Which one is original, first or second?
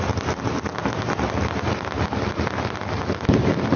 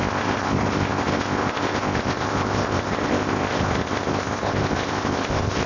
first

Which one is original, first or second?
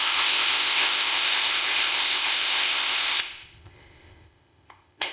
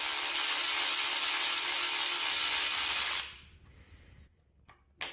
second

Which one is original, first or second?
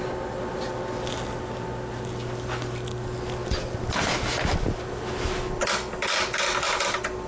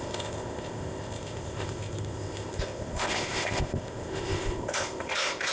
first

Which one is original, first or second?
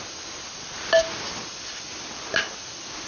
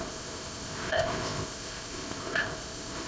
first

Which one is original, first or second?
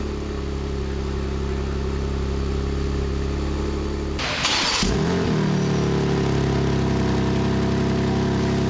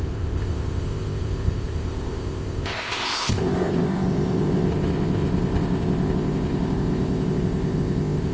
first